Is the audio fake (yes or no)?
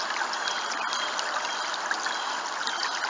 no